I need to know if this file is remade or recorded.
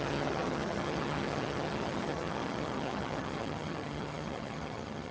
remade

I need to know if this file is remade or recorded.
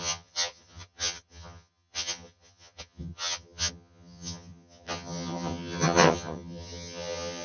remade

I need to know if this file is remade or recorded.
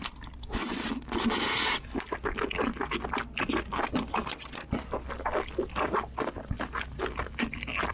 recorded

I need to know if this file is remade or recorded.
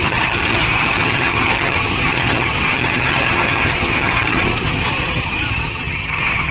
remade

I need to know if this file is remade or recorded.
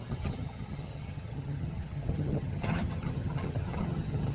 remade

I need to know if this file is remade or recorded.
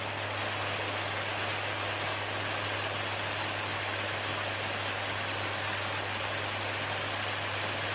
recorded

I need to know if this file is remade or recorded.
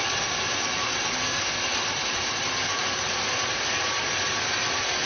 recorded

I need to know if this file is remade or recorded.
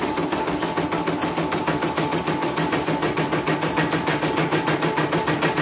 recorded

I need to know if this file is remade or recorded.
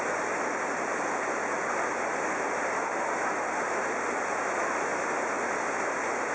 recorded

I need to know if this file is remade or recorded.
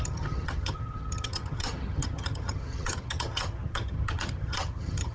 remade